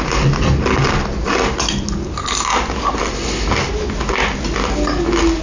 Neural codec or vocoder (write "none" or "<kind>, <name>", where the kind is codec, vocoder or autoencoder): none